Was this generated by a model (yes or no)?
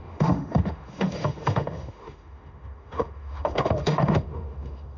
yes